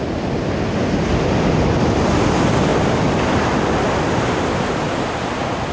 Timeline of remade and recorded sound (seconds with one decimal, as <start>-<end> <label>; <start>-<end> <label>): 0.0-5.7 recorded